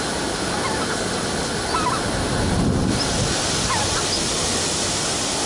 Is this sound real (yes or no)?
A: yes